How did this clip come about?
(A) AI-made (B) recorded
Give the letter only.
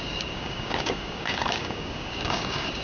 A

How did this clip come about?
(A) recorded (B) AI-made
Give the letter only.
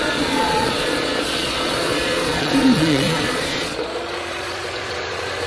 B